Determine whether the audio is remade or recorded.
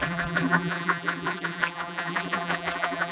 remade